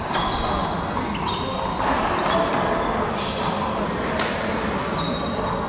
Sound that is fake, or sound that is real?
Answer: real